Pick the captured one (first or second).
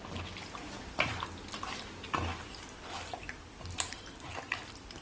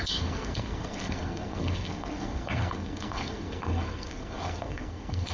first